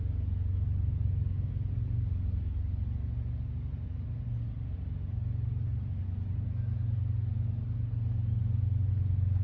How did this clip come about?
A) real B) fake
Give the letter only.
A